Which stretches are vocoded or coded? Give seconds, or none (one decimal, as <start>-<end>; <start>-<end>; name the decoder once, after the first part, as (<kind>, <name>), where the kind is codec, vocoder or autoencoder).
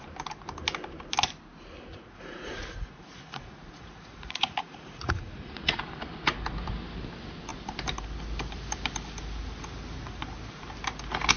1.9-5.8 (vocoder, Vocos)